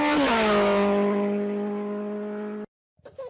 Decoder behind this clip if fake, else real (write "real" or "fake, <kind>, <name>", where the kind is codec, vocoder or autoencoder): real